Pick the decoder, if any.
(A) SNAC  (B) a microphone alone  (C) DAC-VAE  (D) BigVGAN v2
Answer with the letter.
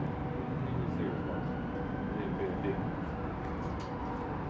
B